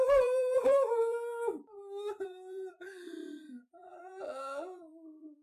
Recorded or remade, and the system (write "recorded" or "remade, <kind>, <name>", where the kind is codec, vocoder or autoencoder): remade, vocoder, BigVGAN v2